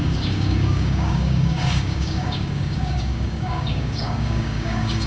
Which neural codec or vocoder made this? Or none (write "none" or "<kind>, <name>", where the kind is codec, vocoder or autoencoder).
codec, DAC